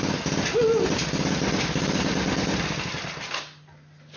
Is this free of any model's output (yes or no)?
yes